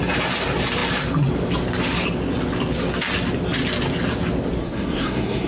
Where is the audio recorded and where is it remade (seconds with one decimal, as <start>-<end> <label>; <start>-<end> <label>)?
0.0-4.6 recorded; 4.6-5.5 remade